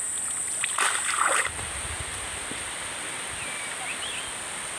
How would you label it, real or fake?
real